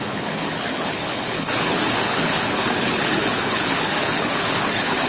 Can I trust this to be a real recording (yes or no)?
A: no